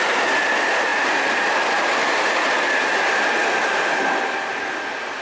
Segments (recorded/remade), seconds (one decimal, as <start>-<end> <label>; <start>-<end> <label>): 0.0-0.9 recorded; 0.9-1.9 remade; 1.9-5.2 recorded